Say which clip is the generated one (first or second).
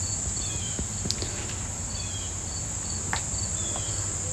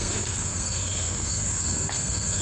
second